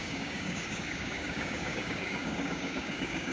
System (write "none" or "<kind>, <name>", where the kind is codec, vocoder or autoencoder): codec, DAC